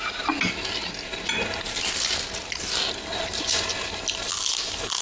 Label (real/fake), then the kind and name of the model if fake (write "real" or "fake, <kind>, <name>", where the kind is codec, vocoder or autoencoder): real